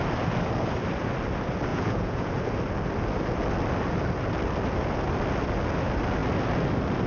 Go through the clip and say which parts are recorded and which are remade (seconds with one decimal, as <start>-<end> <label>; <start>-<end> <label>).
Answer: 0.0-1.7 recorded; 1.7-2.3 remade; 2.3-7.1 recorded